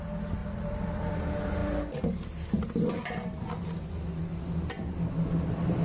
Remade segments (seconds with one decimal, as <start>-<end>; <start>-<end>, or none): 0.4-1.1